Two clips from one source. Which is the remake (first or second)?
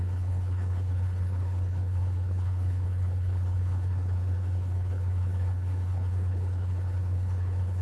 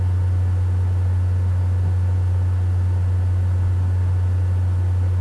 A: first